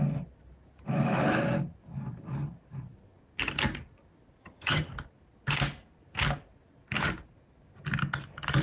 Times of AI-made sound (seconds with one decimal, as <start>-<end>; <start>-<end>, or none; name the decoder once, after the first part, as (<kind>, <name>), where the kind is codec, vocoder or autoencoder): 4.4-4.9 (vocoder, HiFi-GAN)